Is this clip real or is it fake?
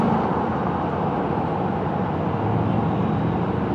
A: real